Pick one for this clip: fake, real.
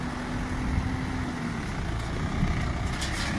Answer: real